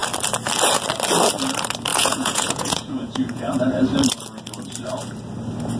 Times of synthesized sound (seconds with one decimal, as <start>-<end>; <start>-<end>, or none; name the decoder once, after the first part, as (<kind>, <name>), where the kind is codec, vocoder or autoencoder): 1.9-3.5 (vocoder, Vocos)